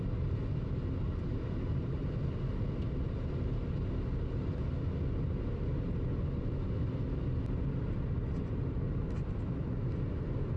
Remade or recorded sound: recorded